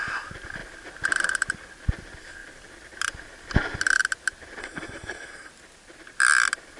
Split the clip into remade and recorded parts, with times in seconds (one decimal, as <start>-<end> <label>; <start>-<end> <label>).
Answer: 0.0-4.6 recorded; 4.6-5.5 remade; 5.5-6.8 recorded